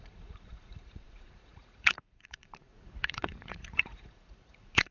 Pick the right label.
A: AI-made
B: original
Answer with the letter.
A